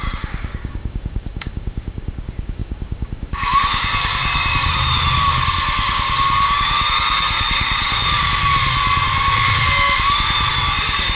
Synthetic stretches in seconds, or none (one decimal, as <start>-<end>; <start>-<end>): 0.0-8.5; 10.5-11.2